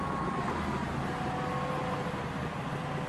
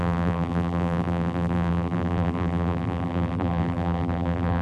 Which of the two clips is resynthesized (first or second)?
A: second